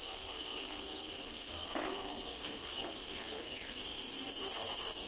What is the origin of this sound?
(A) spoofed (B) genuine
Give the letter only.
A